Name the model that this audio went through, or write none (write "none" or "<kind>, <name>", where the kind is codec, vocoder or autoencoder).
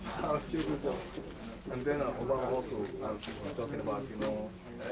none